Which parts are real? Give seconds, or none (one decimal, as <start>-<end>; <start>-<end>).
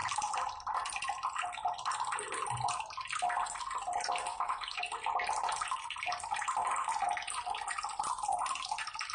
0.0-4.3; 4.8-9.1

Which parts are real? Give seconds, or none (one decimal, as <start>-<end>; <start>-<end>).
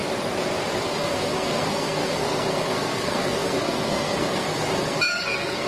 0.0-0.8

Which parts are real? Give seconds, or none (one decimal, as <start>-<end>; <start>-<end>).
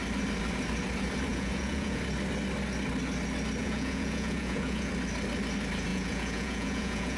0.0-1.3; 2.0-3.6; 4.9-5.9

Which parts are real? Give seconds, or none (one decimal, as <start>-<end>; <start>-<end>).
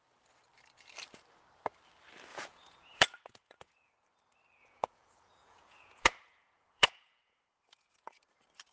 0.0-2.3; 3.9-4.6; 8.2-8.7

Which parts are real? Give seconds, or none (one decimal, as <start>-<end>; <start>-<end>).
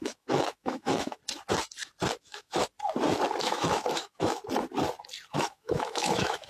1.2-2.2; 2.6-3.4; 4.4-5.3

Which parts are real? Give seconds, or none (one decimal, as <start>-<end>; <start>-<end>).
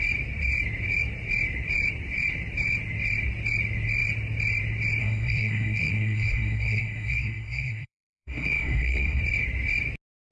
0.0-5.0; 9.2-10.3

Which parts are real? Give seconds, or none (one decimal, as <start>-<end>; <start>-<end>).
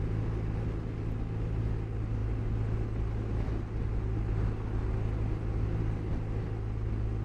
0.0-7.2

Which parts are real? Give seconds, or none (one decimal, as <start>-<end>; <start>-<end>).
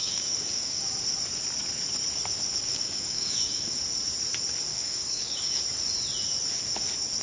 0.9-2.7; 3.8-4.7; 5.6-7.2